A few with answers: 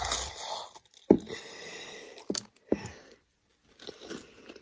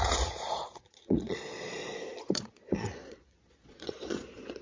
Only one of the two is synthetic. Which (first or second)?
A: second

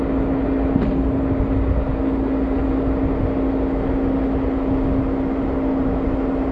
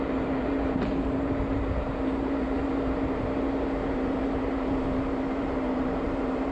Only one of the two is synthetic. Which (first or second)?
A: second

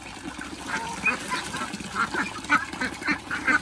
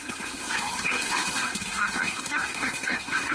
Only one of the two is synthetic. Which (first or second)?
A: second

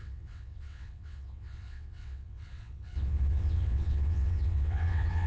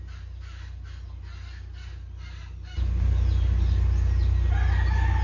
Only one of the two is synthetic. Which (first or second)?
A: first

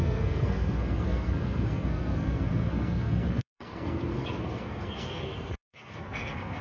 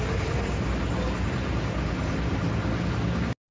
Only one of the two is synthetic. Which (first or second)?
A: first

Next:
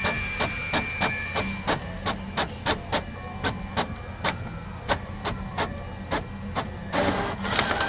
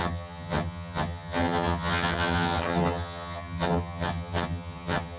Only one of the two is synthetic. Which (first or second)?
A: second